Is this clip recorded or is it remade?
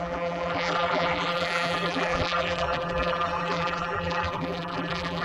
remade